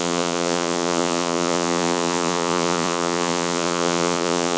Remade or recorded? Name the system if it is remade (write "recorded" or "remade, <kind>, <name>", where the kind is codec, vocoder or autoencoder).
remade, vocoder, Vocos